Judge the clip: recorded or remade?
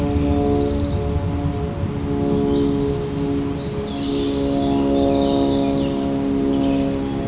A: recorded